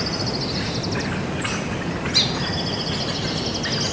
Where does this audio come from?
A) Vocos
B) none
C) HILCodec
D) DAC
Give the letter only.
B